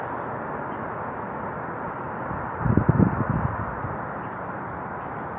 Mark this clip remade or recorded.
recorded